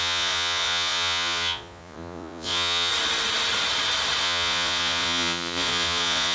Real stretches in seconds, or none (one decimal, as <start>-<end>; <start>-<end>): 2.9-4.2